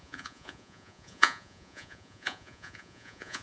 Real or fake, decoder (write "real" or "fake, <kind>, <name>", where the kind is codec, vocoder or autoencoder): fake, vocoder, Vocos